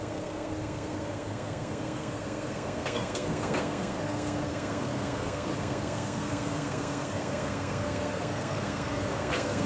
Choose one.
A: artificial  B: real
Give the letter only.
A